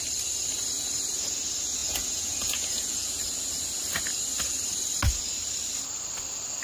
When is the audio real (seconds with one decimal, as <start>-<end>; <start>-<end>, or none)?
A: 0.0-1.8; 3.2-6.6